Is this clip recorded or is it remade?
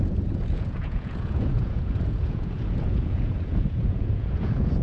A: remade